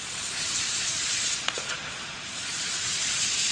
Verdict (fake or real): fake